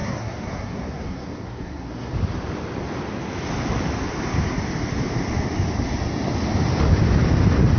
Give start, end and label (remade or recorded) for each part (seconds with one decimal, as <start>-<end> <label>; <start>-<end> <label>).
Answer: 0.0-2.1 remade; 2.1-7.8 recorded